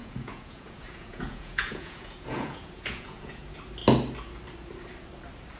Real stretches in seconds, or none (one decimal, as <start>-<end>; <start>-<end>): 3.4-5.6